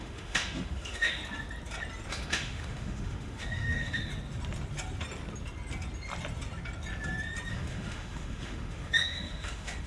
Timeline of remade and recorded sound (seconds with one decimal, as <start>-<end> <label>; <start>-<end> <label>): 0.0-1.2 remade; 1.2-2.1 recorded; 2.1-4.1 remade; 4.1-7.5 recorded; 7.5-9.9 remade